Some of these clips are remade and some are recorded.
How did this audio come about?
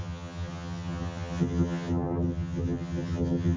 remade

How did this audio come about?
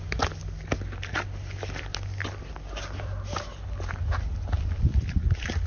recorded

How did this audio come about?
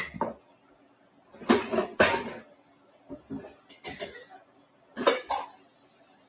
recorded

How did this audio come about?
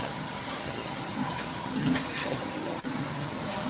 remade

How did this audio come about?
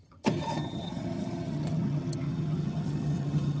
remade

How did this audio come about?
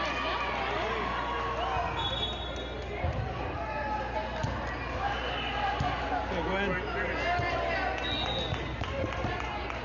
recorded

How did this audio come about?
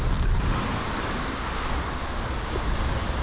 recorded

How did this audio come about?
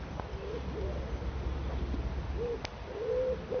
recorded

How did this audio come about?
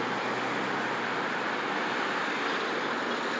recorded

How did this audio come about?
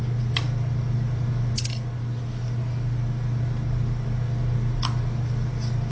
recorded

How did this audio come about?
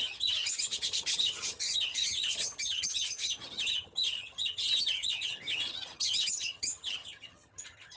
remade